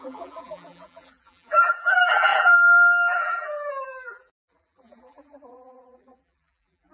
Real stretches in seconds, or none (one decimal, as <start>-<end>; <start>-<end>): none